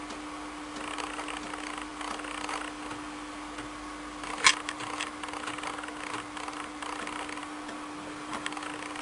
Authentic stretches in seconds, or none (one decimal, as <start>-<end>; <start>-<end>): 0.0-9.0